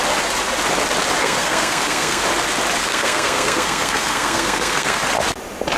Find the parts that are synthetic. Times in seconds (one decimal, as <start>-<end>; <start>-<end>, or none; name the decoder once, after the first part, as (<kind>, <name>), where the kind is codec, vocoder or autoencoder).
1.2-2.2 (codec, SNAC); 2.8-5.0